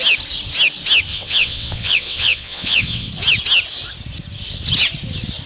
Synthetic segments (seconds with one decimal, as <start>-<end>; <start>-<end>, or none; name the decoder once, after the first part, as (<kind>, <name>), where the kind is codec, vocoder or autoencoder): 1.1-3.1 (vocoder, WaveNeXt)